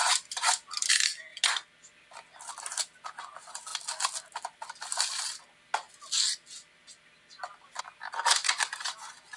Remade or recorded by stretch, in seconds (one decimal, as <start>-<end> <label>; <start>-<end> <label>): 0.0-0.9 remade; 0.9-9.4 recorded